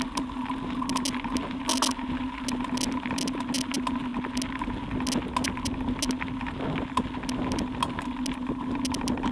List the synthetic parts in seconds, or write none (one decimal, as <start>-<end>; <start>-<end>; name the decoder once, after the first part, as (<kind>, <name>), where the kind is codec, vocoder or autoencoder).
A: none